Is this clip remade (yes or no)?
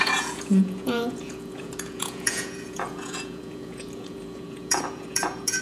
yes